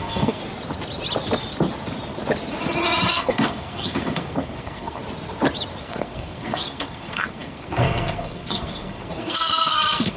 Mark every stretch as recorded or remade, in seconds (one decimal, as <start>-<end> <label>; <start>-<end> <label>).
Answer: 0.0-0.4 remade; 0.4-3.1 recorded; 3.1-5.0 remade; 5.0-5.8 recorded; 5.8-10.2 remade